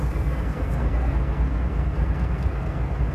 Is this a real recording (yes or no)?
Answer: no